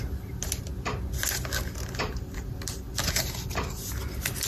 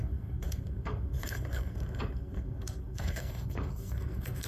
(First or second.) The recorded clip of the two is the first